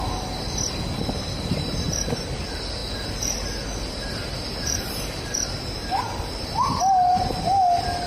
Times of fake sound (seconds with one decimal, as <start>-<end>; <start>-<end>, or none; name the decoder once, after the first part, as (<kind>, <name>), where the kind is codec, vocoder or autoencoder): none